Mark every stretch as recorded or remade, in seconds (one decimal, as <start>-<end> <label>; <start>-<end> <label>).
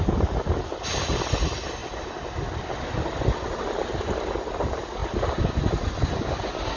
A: 0.0-6.8 recorded